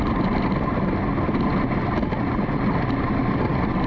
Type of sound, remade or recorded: recorded